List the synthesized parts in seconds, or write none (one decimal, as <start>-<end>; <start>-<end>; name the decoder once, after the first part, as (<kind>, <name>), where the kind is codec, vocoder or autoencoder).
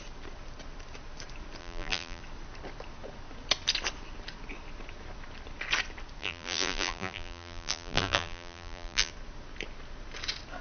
1.6-2.2 (vocoder, BigVGAN v2); 6.2-9.1